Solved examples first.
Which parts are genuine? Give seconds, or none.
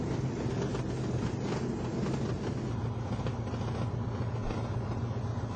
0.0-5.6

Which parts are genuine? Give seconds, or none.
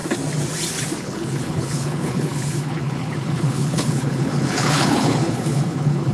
0.0-1.0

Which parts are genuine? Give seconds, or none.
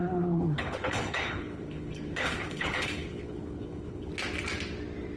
4.1-5.2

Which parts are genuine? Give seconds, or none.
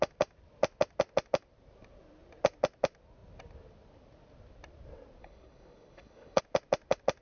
0.0-5.2; 6.4-7.2